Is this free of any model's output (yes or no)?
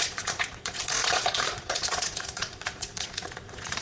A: no